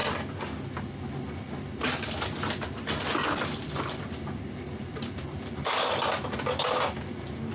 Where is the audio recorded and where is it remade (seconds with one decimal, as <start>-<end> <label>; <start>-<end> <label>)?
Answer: 0.0-7.5 recorded